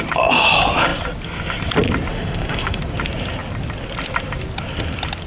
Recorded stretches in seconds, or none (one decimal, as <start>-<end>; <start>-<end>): 0.0-2.1; 2.8-5.3